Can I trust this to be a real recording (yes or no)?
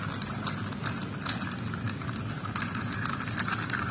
yes